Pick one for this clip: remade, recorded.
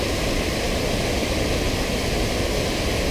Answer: recorded